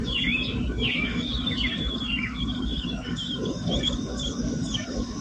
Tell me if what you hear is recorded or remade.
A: remade